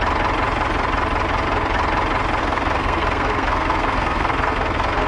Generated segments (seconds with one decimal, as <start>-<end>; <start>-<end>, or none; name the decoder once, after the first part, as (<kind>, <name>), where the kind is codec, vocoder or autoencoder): 2.4-5.1 (codec, SNAC)